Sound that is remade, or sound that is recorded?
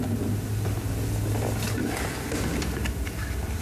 recorded